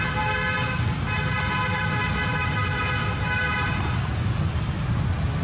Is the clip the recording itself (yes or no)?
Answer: yes